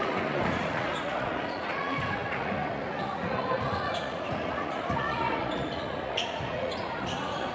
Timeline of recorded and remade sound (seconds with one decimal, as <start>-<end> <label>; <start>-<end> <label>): 0.0-7.5 remade